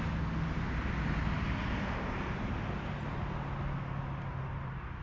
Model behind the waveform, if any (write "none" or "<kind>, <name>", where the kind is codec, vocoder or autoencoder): none